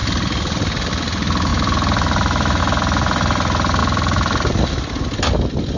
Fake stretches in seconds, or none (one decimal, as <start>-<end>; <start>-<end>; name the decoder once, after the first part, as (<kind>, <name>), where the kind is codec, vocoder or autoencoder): 0.0-0.9 (vocoder, BigVGAN v2); 1.5-2.6; 3.8-5.0